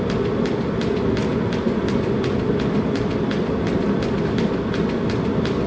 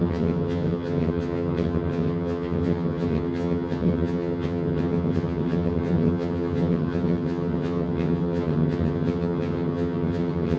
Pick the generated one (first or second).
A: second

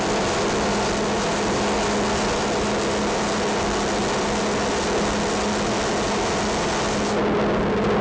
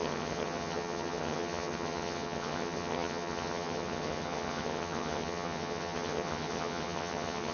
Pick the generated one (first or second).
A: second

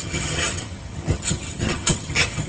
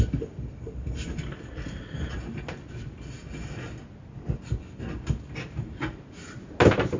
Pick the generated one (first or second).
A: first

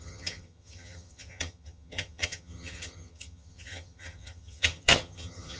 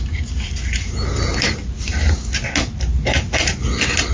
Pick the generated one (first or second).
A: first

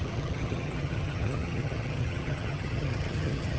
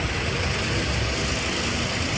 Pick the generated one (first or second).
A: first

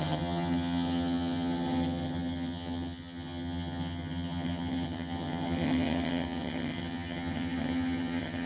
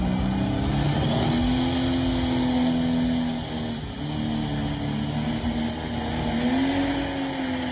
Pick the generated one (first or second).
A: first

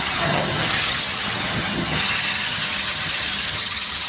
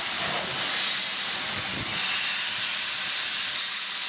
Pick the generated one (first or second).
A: first